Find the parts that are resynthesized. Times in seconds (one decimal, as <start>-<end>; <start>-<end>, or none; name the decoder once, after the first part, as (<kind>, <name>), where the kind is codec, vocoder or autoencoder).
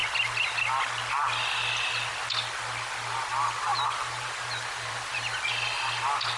3.7-5.2 (vocoder, BigVGAN v2)